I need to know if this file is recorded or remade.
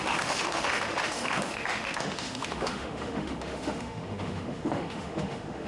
remade